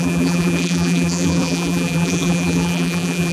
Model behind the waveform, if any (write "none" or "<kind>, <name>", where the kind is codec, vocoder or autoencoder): vocoder, BigVGAN v2